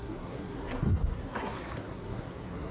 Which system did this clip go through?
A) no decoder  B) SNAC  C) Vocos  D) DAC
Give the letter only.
B